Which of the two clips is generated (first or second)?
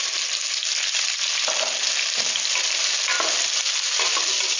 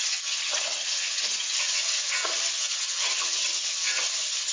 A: second